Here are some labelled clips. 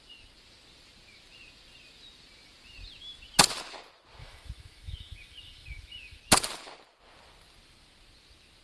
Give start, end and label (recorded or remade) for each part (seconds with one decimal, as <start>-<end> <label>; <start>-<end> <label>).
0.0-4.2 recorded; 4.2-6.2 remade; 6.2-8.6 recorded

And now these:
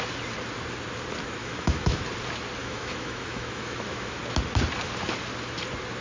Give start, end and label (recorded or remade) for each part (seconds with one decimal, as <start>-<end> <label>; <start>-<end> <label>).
0.0-1.4 recorded; 1.4-2.0 remade; 2.0-2.6 recorded; 2.6-4.2 remade; 4.2-6.0 recorded

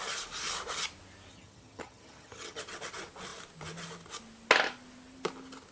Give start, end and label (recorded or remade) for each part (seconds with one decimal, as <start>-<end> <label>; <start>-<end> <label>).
0.0-1.3 recorded; 1.3-2.6 remade; 2.6-5.7 recorded

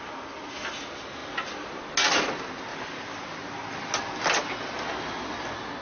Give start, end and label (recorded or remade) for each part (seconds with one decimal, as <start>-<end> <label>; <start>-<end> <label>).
0.0-1.2 recorded; 1.2-1.9 remade; 1.9-5.8 recorded